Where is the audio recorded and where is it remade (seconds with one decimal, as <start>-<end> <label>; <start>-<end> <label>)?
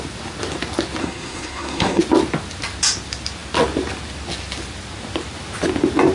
0.0-1.0 recorded; 1.0-2.0 remade; 2.0-6.1 recorded